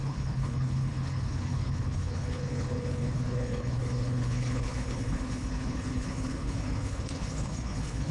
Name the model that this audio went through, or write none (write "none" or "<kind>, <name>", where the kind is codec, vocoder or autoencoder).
codec, HILCodec